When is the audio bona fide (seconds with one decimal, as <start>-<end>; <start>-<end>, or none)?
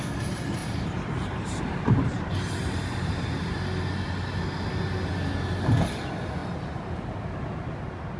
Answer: 0.0-0.6; 3.5-6.4; 6.9-8.2